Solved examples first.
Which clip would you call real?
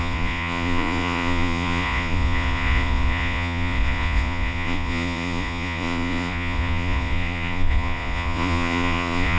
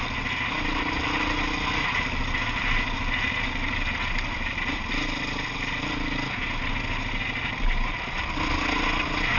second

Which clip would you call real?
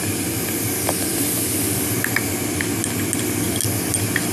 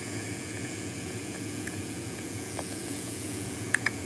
first